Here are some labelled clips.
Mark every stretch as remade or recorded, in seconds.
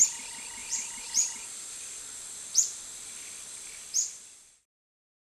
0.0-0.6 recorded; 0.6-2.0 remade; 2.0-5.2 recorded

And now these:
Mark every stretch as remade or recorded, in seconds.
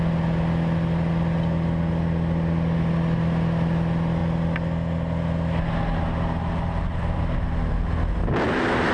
0.0-8.9 recorded